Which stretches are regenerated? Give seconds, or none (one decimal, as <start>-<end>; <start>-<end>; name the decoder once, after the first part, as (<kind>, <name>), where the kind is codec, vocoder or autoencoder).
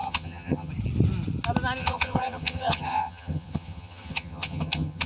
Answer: 0.0-0.7 (vocoder, HiFi-GAN); 1.8-5.1